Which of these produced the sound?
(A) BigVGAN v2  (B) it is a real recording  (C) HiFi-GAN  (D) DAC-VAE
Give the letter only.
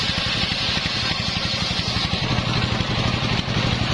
B